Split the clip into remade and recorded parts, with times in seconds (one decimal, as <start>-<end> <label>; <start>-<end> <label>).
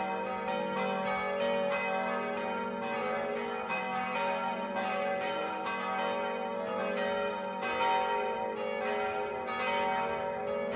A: 0.0-3.0 recorded; 3.0-5.6 remade; 5.6-10.8 recorded